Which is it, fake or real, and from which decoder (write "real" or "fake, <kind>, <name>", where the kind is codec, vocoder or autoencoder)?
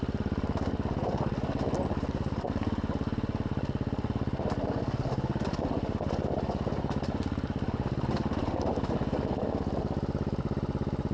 real